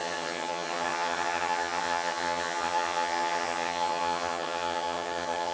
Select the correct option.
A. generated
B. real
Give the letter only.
A